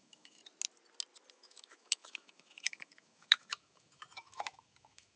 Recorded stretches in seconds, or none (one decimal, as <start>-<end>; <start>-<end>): 0.4-1.3